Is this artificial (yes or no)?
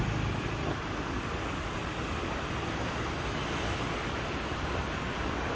no